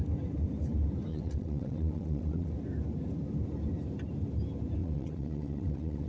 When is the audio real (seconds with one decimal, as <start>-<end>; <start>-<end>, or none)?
0.0-1.1; 2.5-4.8